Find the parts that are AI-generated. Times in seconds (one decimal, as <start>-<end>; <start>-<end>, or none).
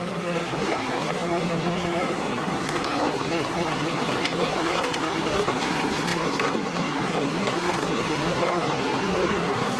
0.0-9.8